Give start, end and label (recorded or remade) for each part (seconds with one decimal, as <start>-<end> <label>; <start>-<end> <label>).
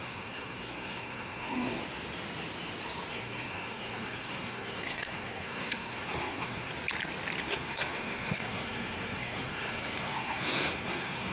0.0-1.8 remade; 1.8-3.1 recorded; 3.1-6.7 remade; 6.7-7.4 recorded; 7.4-11.3 remade